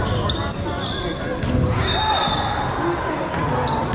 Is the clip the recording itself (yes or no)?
yes